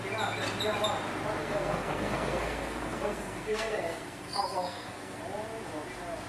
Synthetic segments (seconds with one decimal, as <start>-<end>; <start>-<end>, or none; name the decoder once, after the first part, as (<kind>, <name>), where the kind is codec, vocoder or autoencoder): 1.4-5.2 (codec, SNAC)